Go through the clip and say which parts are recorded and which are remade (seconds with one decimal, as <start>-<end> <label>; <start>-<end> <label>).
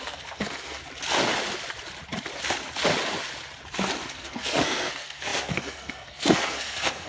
0.0-0.8 remade; 0.8-4.1 recorded; 4.1-7.1 remade